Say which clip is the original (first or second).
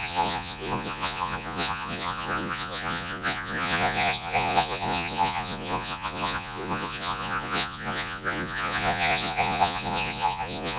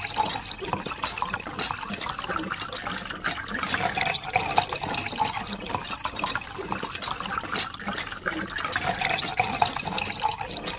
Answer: second